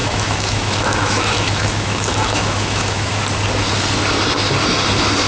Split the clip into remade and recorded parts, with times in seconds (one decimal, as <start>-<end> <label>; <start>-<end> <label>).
0.0-3.2 remade; 3.2-5.3 recorded